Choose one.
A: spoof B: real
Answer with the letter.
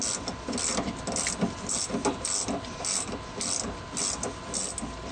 B